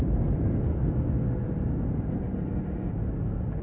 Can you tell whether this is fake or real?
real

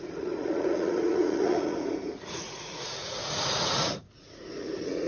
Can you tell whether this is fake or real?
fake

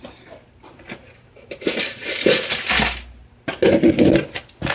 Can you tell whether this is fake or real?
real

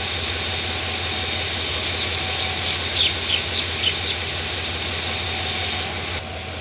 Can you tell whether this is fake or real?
real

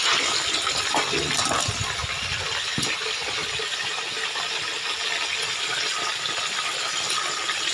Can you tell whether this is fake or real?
real